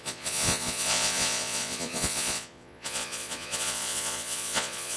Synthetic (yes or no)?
yes